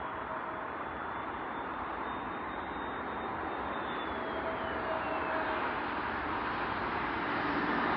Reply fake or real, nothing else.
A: real